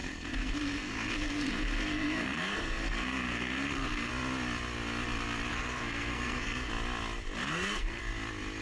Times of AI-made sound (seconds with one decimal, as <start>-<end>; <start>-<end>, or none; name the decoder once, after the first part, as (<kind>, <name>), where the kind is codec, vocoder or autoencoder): 0.0-4.1 (codec, SNAC); 5.5-6.7; 7.4-8.0